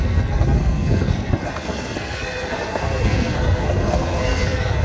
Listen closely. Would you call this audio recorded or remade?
remade